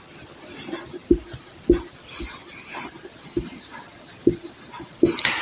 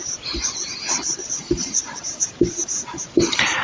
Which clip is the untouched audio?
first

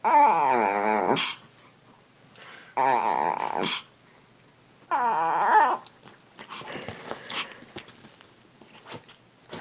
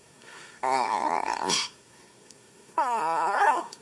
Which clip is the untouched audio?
first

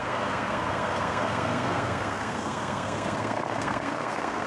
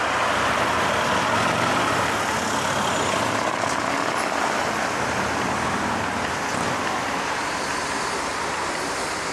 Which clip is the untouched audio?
second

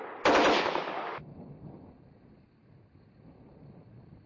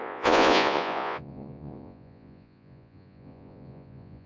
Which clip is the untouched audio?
first